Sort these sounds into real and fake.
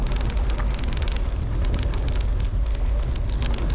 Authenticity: real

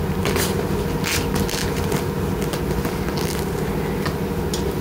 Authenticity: real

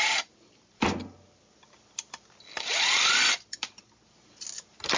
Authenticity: real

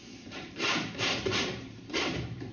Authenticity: fake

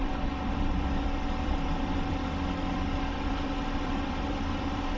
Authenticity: fake